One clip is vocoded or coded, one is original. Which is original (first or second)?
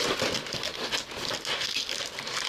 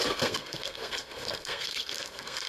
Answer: first